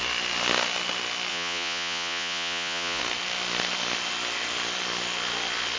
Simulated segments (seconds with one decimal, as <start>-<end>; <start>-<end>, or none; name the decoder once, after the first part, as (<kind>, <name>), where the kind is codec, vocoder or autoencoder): 1.3-3.0 (vocoder, Vocos)